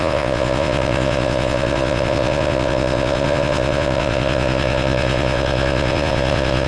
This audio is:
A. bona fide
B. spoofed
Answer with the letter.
B